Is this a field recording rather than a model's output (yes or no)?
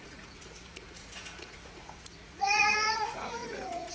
no